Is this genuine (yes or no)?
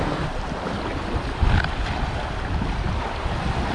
no